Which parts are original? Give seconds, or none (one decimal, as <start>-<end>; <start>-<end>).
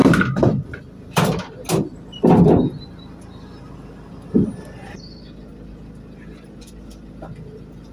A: 0.0-7.9